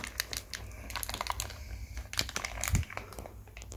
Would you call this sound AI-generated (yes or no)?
no